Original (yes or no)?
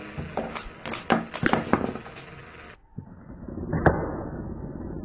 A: yes